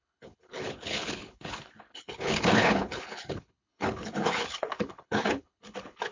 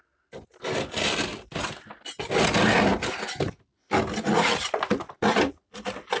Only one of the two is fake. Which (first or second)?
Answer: first